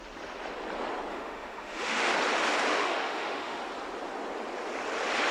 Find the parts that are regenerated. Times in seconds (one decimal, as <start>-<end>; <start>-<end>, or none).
1.1-2.1; 2.7-3.6